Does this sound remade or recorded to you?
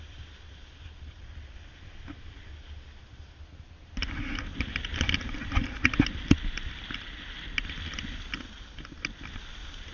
recorded